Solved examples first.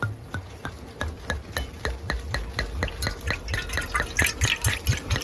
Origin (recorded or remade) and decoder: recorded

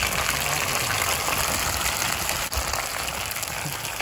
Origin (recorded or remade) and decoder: recorded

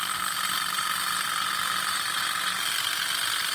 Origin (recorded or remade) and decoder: recorded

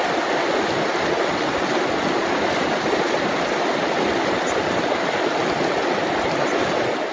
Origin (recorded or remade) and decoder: recorded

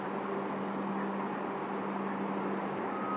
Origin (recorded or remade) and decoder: recorded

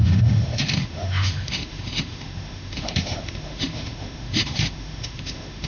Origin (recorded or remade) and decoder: remade, autoencoder, DAC-VAE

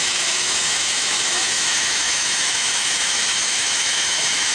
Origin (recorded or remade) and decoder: remade, autoencoder, DAC-VAE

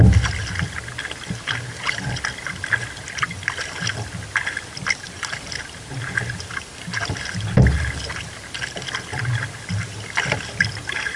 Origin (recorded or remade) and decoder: recorded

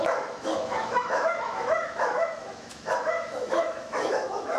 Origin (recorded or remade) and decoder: remade, autoencoder, DAC-VAE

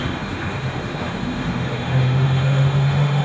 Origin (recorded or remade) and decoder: remade, autoencoder, DAC-VAE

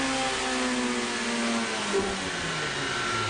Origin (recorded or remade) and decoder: recorded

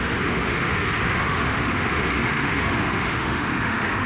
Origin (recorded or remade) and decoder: remade, autoencoder, DAC-VAE